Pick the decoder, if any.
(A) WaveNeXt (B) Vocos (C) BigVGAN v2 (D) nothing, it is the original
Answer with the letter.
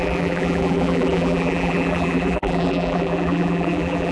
C